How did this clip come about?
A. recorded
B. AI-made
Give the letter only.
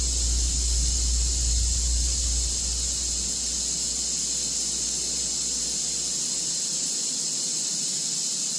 A